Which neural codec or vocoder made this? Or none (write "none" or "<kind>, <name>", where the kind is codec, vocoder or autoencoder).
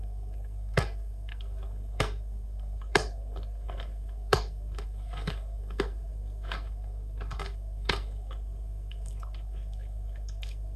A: codec, SNAC